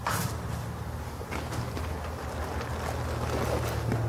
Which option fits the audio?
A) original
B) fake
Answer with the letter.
A